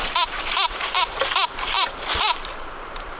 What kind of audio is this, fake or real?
fake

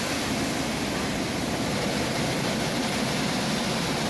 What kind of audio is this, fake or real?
real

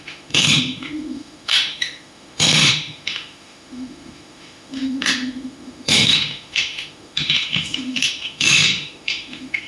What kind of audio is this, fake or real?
fake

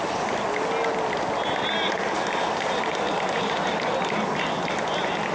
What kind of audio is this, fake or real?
real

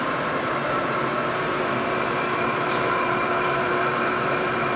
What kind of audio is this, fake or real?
fake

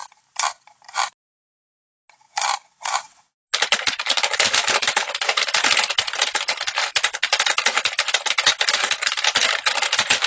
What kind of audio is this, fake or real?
real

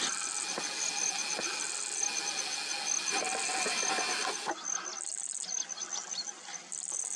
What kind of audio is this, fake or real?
real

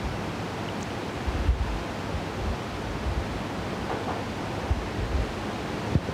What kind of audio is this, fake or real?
real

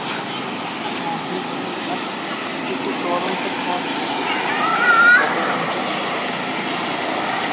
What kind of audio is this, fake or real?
real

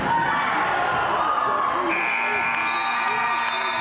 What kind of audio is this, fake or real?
real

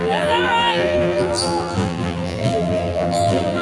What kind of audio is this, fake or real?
fake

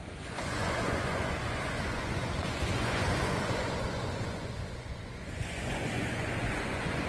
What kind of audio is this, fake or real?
fake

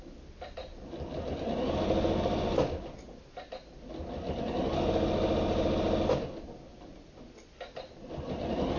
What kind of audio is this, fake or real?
real